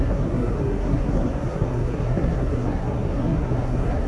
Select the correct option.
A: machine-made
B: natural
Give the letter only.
A